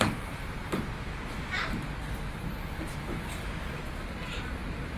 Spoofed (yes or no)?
yes